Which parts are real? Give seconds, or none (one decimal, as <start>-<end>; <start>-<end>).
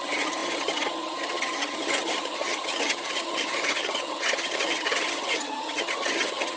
none